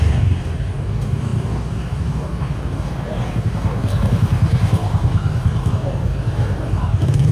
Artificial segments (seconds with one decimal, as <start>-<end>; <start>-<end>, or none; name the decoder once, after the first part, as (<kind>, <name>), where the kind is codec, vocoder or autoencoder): 0.0-7.3 (codec, DAC)